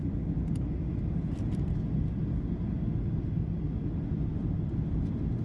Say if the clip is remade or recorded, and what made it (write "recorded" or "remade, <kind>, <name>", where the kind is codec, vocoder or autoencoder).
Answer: recorded